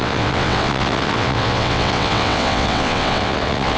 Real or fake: fake